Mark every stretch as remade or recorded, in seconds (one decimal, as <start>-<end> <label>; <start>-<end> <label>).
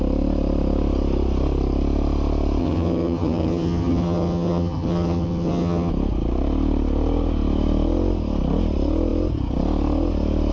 0.0-2.6 recorded; 2.6-5.9 remade; 5.9-10.5 recorded